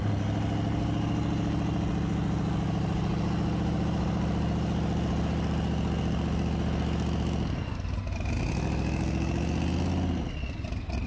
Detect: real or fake real